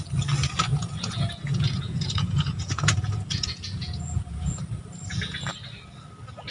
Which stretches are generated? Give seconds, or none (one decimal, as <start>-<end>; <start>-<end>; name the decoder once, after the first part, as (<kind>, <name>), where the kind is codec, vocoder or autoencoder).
0.7-4.6 (vocoder, Vocos)